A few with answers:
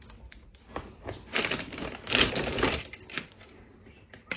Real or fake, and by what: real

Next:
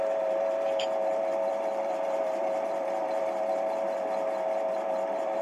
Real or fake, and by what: fake, vocoder, BigVGAN v2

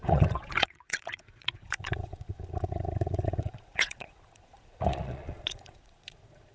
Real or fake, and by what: fake, vocoder, Vocos